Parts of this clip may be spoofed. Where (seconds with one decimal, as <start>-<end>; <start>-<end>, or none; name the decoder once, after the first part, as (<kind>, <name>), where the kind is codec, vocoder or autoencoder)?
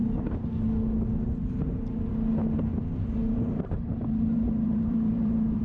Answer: 0.0-0.5 (vocoder, BigVGAN v2); 3.2-5.6